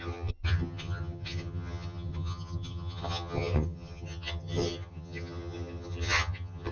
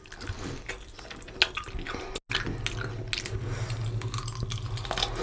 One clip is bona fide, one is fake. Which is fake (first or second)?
first